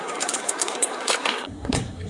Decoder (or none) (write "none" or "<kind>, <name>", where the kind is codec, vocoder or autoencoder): codec, SNAC